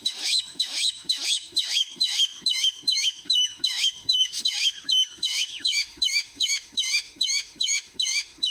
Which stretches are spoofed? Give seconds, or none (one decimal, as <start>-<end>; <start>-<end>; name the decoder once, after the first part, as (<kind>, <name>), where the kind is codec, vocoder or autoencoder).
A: 0.0-8.5 (autoencoder, DAC-VAE)

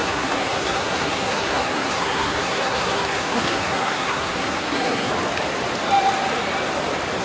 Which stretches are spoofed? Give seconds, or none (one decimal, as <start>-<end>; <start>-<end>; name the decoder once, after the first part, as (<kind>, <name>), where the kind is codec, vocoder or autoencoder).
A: 0.0-5.1 (codec, SNAC)

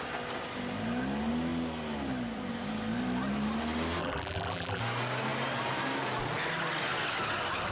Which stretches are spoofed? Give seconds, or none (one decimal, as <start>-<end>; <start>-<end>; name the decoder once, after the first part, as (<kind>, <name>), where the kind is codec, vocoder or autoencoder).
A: 4.0-4.8 (vocoder, BigVGAN v2)

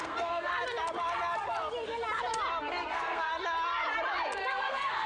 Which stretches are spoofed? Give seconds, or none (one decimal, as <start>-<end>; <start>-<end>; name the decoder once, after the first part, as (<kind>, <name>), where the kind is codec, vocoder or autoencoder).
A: 0.0-0.5 (codec, SNAC); 2.7-3.3; 4.5-5.1

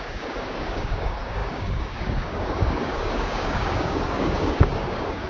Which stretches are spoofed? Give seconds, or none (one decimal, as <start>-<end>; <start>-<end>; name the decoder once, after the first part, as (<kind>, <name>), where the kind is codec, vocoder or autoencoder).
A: 0.0-5.3 (codec, DAC)

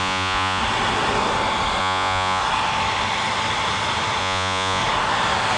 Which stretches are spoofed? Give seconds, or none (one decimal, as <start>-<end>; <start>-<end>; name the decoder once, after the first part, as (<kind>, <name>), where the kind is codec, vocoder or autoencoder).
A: 0.0-0.6 (vocoder, Vocos); 1.8-2.4; 4.2-4.8

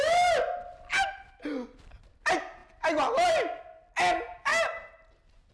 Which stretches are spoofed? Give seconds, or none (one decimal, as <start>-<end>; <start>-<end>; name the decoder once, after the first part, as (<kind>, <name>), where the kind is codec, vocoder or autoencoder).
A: none